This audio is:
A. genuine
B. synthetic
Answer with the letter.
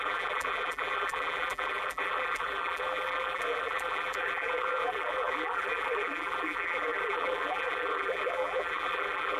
B